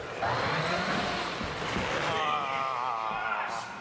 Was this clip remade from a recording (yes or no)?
no